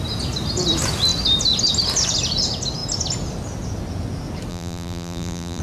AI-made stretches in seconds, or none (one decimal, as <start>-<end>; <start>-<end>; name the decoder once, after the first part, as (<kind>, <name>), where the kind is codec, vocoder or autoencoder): 4.5-5.6 (vocoder, BigVGAN v2)